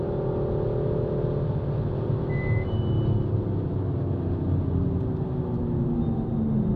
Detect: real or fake real